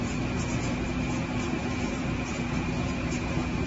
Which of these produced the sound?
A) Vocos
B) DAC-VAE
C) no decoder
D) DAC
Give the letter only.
A